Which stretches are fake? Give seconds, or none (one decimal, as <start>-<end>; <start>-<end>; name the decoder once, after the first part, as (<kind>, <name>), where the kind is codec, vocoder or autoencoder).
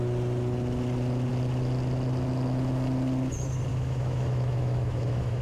3.7-5.4 (autoencoder, DAC-VAE)